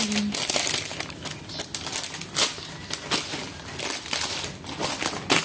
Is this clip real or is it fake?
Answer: real